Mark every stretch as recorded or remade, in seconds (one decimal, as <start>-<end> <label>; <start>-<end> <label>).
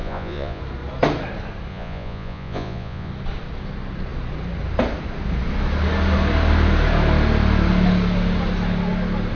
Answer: 0.0-0.6 remade; 0.6-1.7 recorded; 1.7-3.1 remade; 3.1-9.3 recorded